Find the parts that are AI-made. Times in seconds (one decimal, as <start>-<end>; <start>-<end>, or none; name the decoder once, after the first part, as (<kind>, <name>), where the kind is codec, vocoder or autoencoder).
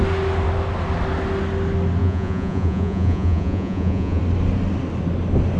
2.0-4.2 (vocoder, Vocos)